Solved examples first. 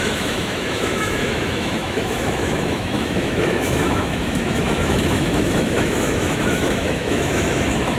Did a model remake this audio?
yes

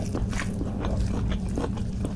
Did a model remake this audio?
no